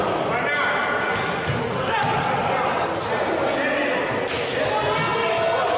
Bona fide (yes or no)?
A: yes